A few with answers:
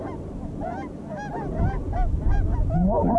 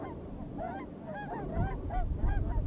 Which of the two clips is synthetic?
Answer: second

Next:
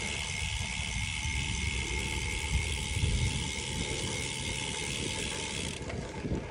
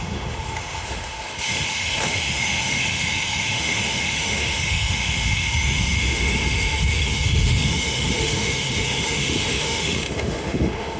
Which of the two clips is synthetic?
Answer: second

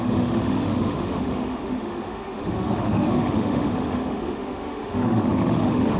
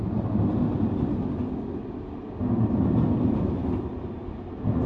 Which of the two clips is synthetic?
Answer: first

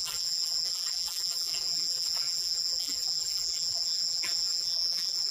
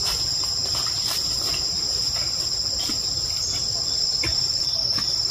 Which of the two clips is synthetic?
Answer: first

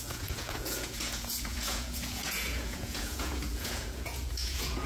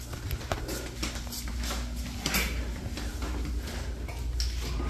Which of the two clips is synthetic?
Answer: first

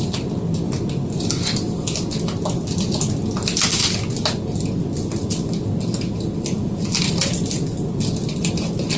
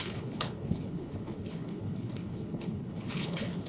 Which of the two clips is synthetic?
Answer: second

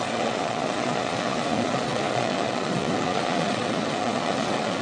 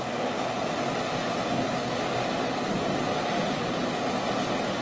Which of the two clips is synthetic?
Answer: first